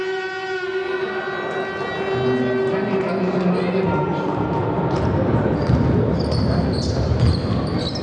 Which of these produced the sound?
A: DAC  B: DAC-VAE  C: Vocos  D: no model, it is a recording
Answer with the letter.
D